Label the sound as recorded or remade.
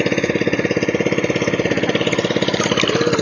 recorded